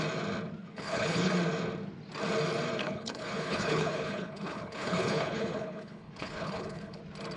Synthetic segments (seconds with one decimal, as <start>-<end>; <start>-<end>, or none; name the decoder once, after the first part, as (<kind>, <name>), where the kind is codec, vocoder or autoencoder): 0.6-1.3 (codec, HILCodec); 2.8-7.0